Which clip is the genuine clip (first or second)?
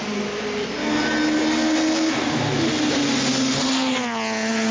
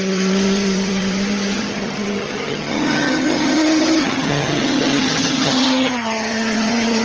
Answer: first